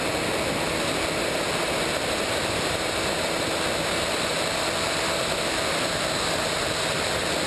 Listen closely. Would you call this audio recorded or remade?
recorded